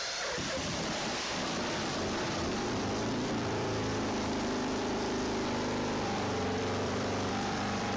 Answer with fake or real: fake